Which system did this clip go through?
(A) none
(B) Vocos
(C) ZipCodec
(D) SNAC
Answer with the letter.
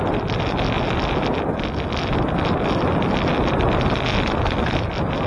A